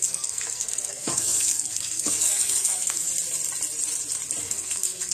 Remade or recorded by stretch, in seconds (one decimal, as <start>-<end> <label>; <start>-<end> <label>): 0.0-3.1 remade; 3.1-4.4 recorded; 4.4-5.1 remade